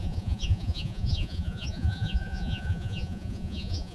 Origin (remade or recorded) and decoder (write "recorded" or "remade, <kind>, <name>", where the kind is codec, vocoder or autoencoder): remade, vocoder, Vocos